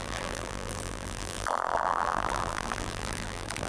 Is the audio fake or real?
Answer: fake